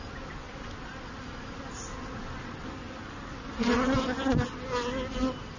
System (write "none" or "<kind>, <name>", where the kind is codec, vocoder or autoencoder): none